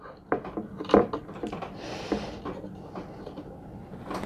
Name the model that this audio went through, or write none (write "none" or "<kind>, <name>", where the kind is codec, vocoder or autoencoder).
none